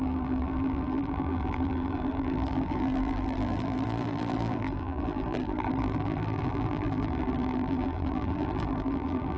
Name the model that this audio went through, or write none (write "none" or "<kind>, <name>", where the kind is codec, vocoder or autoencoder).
vocoder, BigVGAN v2